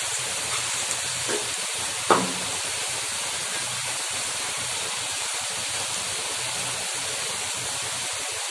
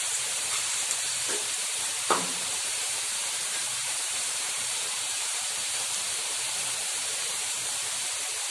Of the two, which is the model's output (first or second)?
second